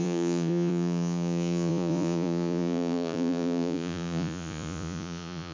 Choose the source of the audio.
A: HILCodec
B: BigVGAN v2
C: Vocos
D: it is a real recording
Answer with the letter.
C